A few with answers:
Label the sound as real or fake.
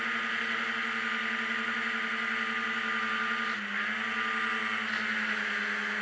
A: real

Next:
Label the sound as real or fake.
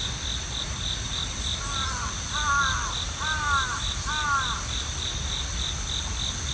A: real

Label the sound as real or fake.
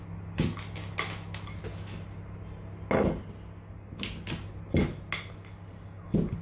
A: real